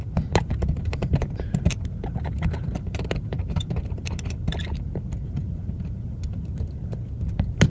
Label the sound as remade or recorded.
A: remade